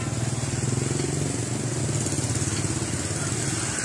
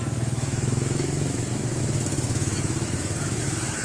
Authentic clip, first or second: first